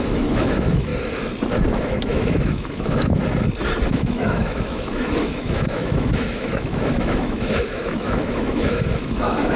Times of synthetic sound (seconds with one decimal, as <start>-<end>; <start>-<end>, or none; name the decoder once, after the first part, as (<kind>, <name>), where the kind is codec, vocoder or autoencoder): 0.0-0.9 (autoencoder, DAC-VAE); 1.8-3.2; 3.9-9.6